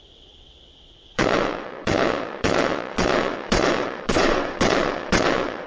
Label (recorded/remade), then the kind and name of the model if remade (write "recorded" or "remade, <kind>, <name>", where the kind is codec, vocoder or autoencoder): remade, vocoder, WaveNeXt